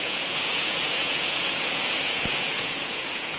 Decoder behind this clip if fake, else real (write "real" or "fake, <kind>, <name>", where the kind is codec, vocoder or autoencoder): fake, vocoder, Vocos